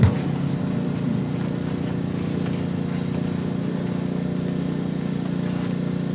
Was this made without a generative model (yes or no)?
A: yes